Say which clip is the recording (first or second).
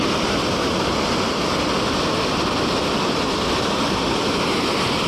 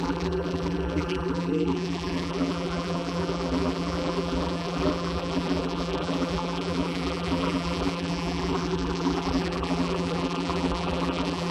first